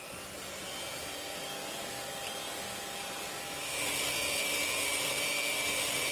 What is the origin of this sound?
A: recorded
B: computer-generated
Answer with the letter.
A